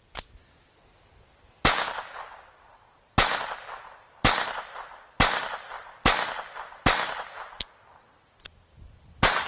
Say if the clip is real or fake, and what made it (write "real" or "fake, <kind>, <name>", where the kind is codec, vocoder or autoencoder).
real